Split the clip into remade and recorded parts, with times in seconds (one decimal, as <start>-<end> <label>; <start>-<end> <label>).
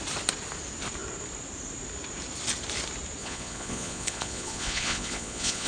0.0-3.2 recorded; 3.2-5.7 remade